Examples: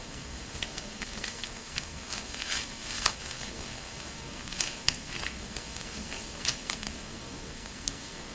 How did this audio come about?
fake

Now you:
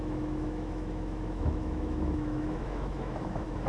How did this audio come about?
fake